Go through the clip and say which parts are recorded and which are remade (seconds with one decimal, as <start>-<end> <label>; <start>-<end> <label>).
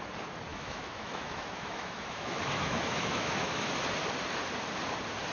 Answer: 0.0-0.5 recorded; 0.5-3.7 remade; 3.7-5.3 recorded